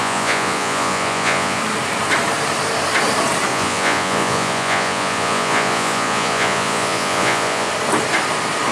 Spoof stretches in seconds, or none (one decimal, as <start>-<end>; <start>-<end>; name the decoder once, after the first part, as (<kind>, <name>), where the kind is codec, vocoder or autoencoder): 0.0-1.6 (vocoder, Vocos); 3.5-7.7

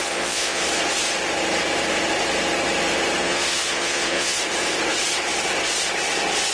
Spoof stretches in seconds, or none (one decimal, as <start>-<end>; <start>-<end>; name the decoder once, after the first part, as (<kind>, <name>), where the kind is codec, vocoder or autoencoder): 0.0-0.6 (vocoder, Vocos); 3.2-4.4